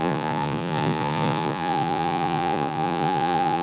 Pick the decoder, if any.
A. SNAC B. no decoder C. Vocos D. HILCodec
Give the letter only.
C